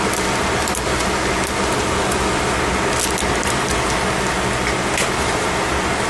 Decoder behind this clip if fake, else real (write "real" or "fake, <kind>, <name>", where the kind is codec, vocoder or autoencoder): real